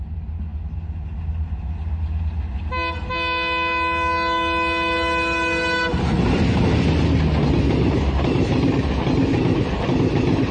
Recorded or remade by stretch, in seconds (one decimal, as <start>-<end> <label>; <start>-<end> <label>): 0.0-10.5 recorded